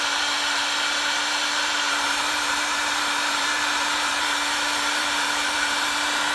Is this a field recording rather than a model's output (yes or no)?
no